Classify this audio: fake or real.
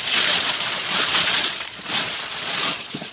fake